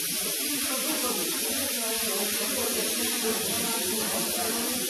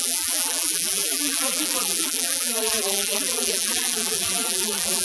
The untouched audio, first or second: first